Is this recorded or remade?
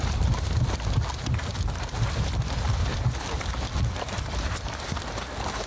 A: recorded